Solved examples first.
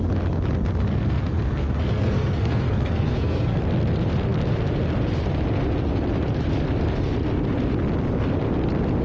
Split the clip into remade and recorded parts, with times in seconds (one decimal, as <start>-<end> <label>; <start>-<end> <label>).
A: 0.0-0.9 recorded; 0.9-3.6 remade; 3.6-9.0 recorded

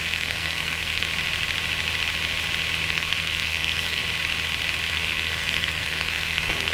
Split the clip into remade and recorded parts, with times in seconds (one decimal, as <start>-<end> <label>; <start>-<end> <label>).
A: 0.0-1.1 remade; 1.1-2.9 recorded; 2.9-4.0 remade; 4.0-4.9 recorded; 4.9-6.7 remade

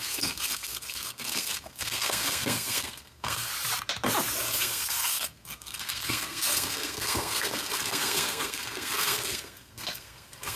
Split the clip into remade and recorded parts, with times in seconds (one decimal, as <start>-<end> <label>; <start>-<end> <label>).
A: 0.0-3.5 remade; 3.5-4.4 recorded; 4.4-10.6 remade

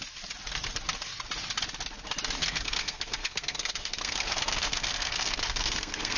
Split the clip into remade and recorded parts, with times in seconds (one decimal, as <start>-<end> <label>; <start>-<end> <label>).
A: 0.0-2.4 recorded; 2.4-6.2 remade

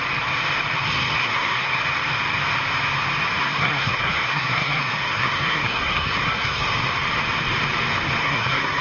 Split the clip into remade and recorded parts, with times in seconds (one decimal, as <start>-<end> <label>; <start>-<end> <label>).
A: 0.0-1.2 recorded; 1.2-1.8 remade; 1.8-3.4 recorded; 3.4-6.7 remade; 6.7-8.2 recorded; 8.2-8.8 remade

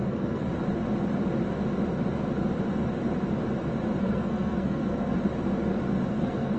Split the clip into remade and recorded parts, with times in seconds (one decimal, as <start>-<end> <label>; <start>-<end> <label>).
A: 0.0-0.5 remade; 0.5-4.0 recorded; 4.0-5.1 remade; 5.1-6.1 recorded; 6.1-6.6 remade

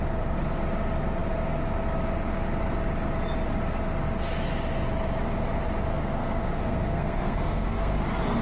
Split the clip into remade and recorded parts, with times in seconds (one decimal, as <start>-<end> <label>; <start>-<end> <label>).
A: 0.0-5.9 recorded; 5.9-8.0 remade; 8.0-8.4 recorded

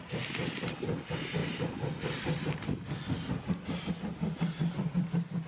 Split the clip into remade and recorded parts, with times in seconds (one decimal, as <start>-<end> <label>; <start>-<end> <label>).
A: 0.0-5.5 recorded